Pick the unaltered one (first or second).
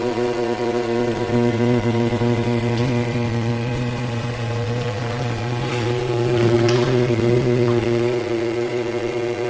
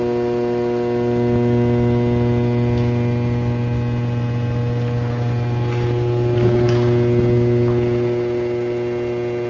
second